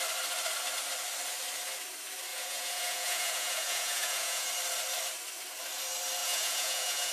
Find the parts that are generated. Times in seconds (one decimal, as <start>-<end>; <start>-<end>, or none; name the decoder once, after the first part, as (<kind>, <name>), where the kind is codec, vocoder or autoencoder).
2.3-4.5 (vocoder, Vocos); 6.2-7.1